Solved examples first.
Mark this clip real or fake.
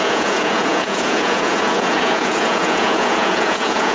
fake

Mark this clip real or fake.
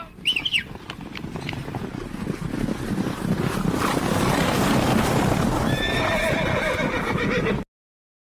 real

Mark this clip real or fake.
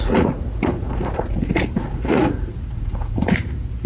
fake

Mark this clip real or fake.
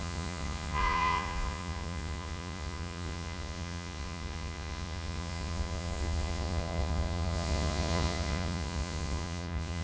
fake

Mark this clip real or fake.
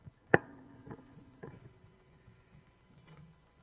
fake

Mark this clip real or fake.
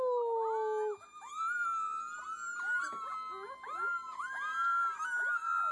real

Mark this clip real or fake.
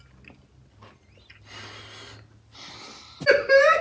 real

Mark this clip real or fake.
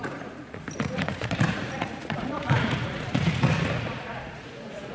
fake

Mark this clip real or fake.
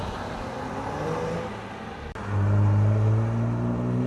real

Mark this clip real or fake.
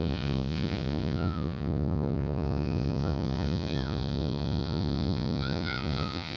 fake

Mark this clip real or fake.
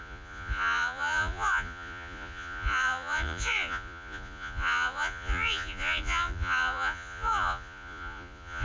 fake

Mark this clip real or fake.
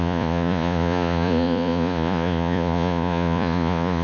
fake